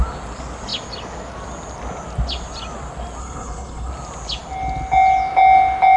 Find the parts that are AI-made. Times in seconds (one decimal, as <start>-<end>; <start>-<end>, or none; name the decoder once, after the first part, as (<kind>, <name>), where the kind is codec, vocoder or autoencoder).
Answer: 3.2-3.9 (codec, HILCodec)